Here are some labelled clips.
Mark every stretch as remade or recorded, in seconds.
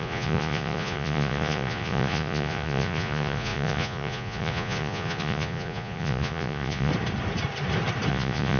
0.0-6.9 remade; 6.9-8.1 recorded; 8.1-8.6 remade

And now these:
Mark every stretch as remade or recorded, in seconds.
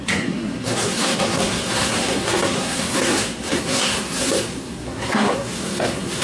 0.0-6.2 remade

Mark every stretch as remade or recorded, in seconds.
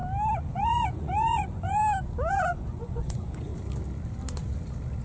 0.0-0.5 recorded; 0.5-1.8 remade; 1.8-2.3 recorded; 2.3-3.5 remade; 3.5-5.0 recorded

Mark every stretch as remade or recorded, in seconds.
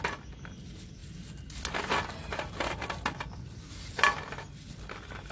0.0-5.3 recorded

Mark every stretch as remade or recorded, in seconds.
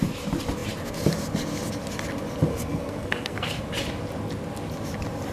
0.0-2.5 recorded; 2.5-3.6 remade; 3.6-5.3 recorded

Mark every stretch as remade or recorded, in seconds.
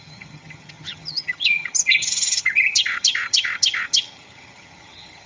0.0-5.3 remade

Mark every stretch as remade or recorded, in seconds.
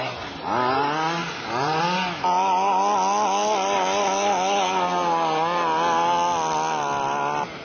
0.0-1.2 recorded; 1.2-1.8 remade; 1.8-7.6 recorded